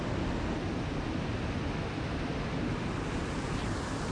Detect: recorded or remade recorded